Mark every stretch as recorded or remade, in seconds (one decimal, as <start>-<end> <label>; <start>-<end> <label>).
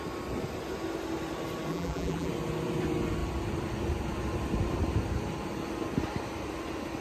0.0-1.7 recorded; 1.7-2.3 remade; 2.3-7.0 recorded